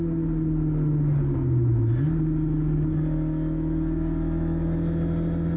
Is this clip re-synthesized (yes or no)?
no